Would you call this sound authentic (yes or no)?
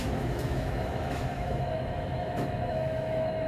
no